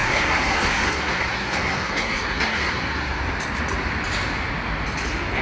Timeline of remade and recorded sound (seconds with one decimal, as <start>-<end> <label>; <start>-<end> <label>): 0.0-3.2 remade; 3.2-5.4 recorded